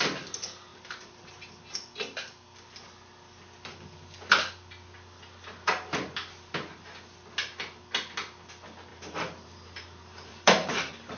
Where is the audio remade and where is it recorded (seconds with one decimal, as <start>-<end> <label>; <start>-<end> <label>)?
0.0-0.7 recorded; 0.7-1.3 remade; 1.3-8.9 recorded; 8.9-11.2 remade